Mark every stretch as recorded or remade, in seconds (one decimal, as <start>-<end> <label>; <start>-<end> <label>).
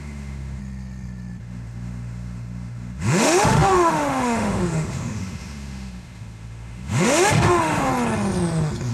0.0-0.6 remade; 0.6-1.4 recorded; 1.4-7.9 remade; 7.9-8.9 recorded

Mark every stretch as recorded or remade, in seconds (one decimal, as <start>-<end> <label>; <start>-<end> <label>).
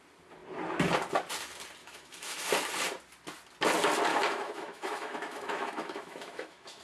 0.0-1.8 recorded; 1.8-2.5 remade; 2.5-4.1 recorded; 4.1-6.8 remade